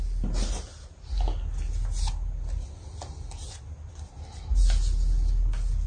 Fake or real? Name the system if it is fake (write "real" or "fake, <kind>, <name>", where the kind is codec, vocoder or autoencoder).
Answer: real